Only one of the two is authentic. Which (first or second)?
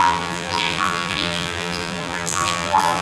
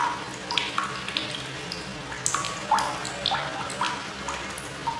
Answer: second